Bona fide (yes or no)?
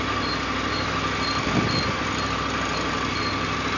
yes